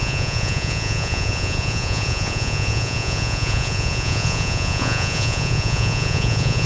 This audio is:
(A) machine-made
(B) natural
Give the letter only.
A